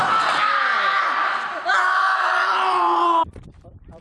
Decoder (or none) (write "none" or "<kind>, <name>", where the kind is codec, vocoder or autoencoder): vocoder, BigVGAN v2